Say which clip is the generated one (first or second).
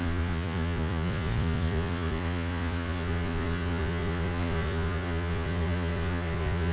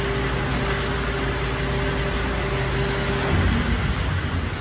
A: first